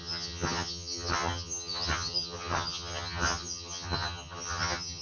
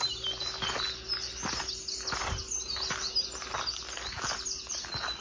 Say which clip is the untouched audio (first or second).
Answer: second